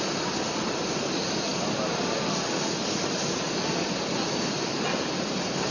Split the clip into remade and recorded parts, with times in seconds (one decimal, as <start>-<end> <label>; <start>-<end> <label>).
0.0-5.7 recorded